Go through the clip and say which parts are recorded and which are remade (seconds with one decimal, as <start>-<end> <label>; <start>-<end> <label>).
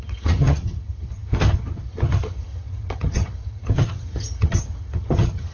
0.0-5.5 remade